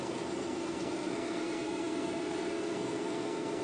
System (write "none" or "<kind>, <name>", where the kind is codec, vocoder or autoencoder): codec, SNAC